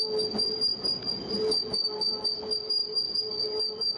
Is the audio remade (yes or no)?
no